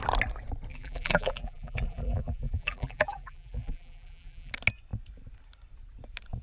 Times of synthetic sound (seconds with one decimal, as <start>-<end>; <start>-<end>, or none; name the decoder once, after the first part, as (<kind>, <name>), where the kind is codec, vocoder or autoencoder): 0.7-4.5 (vocoder, BigVGAN v2)